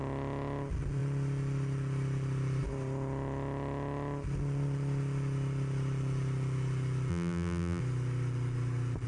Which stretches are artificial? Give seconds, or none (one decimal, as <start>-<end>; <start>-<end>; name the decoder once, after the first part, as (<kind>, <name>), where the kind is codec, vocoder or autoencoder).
7.1-7.8 (vocoder, BigVGAN v2)